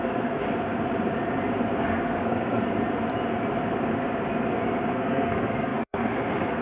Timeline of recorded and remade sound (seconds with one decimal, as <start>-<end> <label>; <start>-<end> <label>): 0.0-0.4 remade; 0.4-1.8 recorded; 1.8-2.7 remade; 2.7-4.9 recorded; 4.9-6.6 remade